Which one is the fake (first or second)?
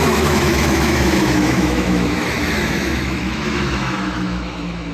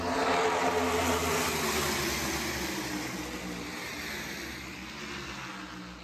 first